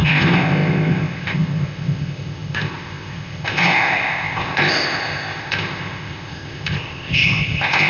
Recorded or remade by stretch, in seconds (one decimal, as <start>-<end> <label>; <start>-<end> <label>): 0.0-7.9 remade